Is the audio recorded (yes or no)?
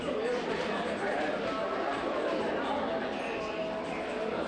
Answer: yes